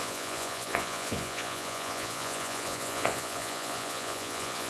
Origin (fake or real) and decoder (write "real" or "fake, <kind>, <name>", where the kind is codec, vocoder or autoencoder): fake, vocoder, Vocos